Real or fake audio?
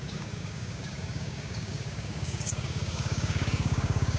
fake